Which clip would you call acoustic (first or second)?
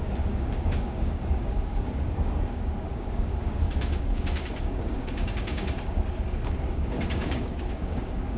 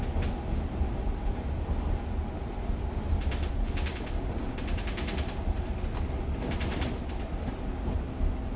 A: second